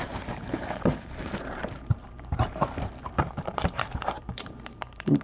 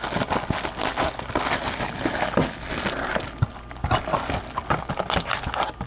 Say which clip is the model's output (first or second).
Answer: first